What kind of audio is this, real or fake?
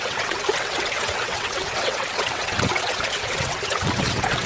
fake